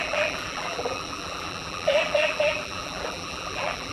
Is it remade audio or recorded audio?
remade